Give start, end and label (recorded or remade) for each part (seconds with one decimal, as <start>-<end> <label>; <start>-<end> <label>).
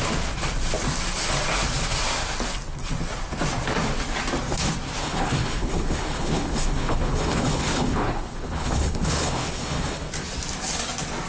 0.0-5.0 recorded; 5.0-10.1 remade; 10.1-11.3 recorded